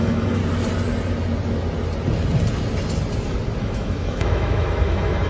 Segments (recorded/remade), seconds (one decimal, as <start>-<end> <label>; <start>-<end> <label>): 0.0-0.4 remade; 0.4-3.6 recorded; 3.6-5.3 remade